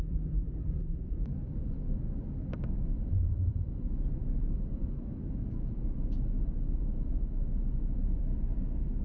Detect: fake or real fake